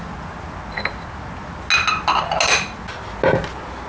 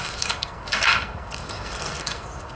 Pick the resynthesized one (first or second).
second